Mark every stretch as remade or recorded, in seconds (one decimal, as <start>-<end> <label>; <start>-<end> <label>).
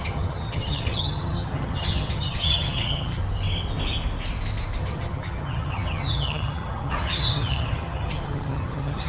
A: 0.0-3.2 remade; 3.2-4.8 recorded; 4.8-9.1 remade